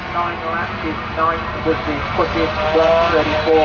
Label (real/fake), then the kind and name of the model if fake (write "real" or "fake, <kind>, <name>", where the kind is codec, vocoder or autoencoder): real